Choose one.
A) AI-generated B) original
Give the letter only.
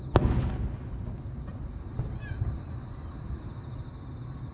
B